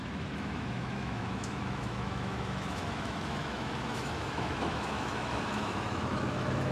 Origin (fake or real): fake